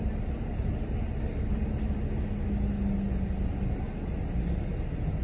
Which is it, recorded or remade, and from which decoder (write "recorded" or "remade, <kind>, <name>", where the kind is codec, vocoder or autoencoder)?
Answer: recorded